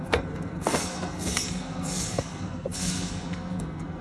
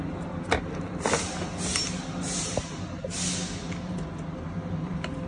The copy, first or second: first